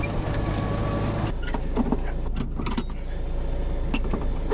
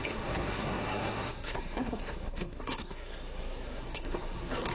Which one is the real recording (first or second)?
first